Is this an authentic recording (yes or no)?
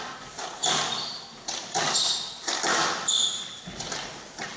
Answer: yes